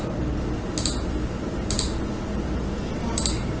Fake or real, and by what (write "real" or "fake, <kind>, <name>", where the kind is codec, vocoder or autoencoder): real